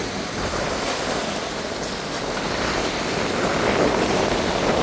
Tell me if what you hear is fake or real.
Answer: real